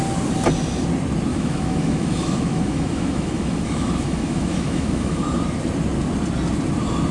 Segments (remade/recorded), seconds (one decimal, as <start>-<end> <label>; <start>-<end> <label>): 0.0-1.3 recorded; 1.3-5.2 remade; 5.2-7.1 recorded